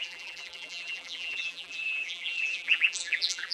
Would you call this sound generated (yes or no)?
yes